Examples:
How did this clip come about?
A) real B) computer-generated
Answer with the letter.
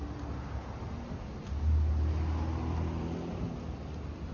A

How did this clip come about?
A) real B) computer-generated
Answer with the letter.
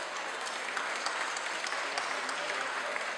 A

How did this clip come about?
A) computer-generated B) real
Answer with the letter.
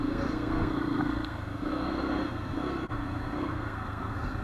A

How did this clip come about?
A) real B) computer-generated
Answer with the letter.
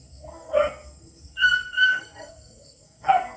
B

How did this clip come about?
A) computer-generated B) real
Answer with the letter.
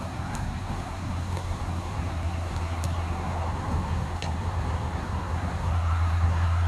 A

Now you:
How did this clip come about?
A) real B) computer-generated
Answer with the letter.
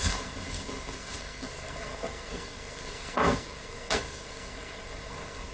B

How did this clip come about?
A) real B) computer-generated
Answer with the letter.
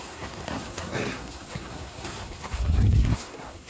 B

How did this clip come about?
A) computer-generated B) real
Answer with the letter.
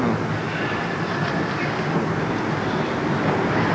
B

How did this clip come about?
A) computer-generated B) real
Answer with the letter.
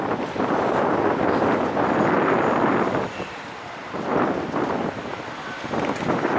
B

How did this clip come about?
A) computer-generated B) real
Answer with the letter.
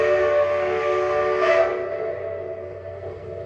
A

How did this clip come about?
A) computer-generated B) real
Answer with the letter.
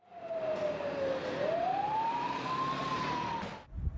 B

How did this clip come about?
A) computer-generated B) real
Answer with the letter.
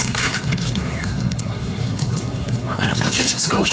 A